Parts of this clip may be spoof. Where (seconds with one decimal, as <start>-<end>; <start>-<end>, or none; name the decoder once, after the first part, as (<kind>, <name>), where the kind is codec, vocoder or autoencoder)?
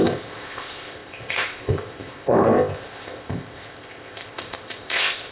0.0-5.3 (codec, ZipCodec)